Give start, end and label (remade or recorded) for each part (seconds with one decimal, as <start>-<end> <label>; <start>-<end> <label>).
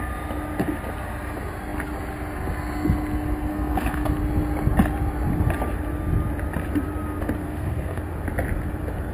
0.0-3.5 recorded; 3.5-4.1 remade; 4.1-7.4 recorded; 7.4-8.0 remade; 8.0-9.1 recorded